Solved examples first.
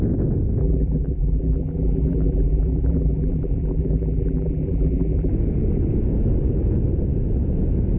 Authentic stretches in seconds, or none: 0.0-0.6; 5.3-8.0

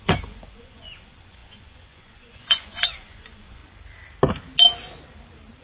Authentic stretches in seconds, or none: 3.6-5.6

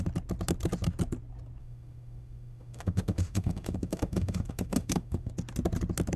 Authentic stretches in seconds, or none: 0.0-1.6; 5.3-6.2